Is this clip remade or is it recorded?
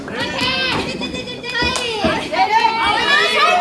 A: recorded